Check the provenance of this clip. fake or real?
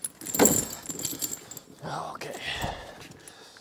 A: real